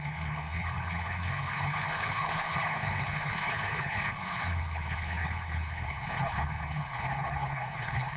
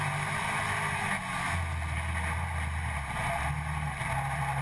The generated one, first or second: first